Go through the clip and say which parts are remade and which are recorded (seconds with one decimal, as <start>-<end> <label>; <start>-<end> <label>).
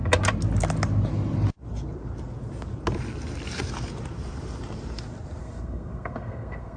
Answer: 0.0-5.4 recorded; 5.4-6.8 remade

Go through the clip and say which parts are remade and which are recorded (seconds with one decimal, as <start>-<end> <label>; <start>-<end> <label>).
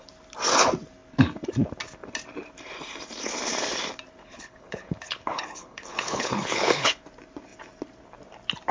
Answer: 0.0-4.2 recorded; 4.2-7.0 remade; 7.0-8.7 recorded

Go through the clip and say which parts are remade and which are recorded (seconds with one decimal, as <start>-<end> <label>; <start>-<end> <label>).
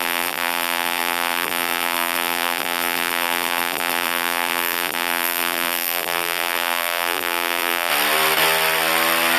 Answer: 0.0-7.9 remade; 7.9-9.4 recorded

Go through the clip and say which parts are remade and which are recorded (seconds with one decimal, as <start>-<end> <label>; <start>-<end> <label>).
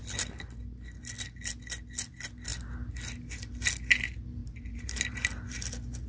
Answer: 0.0-4.4 recorded; 4.4-5.3 remade; 5.3-6.1 recorded